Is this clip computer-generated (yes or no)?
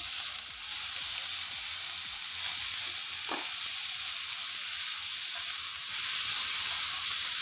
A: no